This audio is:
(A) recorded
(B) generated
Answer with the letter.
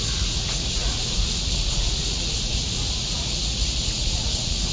B